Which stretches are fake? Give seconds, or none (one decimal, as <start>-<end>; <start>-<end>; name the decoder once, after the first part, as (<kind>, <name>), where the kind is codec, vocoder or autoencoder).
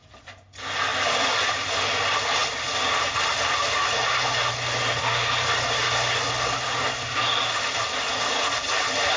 none